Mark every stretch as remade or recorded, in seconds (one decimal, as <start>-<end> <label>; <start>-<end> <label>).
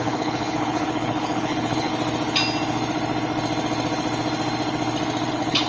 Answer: 0.0-1.9 remade; 1.9-5.3 recorded; 5.3-5.7 remade